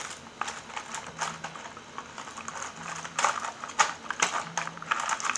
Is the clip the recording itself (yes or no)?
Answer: yes